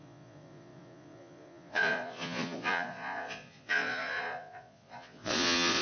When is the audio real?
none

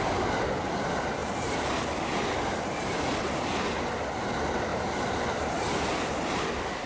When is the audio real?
0.0-1.2; 1.7-4.7; 5.7-6.9

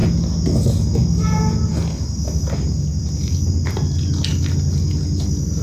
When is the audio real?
0.0-5.6

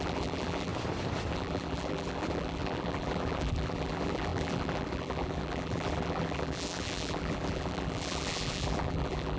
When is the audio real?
0.7-1.3